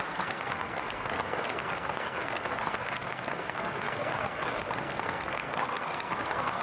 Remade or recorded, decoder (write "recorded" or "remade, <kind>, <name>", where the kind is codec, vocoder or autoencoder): remade, codec, SNAC